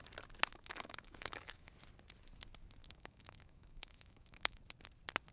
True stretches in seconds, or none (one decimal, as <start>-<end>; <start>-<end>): 0.0-0.5; 1.7-2.8; 4.6-5.3